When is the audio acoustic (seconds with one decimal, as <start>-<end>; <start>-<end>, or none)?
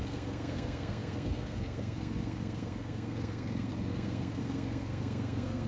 none